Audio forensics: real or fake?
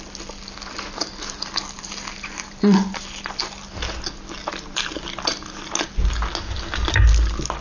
real